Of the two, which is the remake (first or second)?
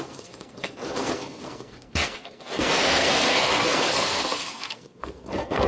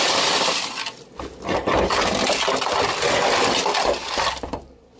first